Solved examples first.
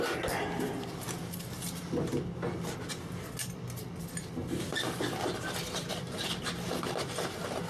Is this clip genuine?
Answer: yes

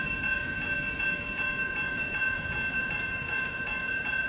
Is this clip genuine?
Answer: no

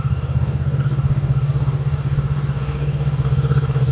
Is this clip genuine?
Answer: no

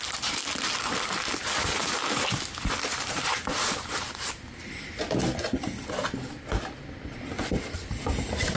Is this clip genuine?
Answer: yes